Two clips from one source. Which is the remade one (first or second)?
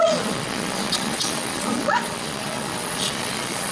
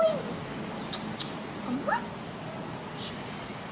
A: first